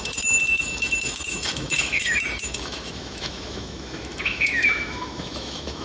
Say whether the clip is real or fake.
fake